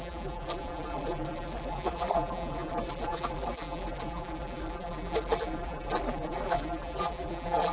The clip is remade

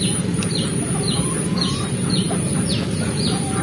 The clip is remade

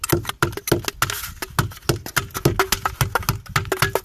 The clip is recorded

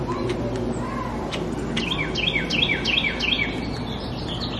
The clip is recorded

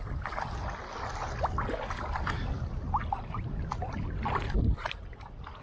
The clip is recorded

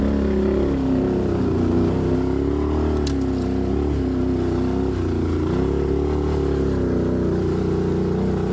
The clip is recorded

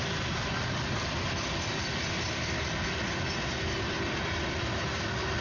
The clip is remade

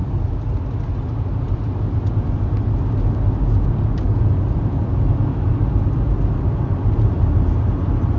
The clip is recorded